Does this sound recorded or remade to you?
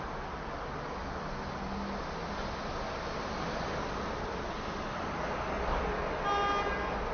recorded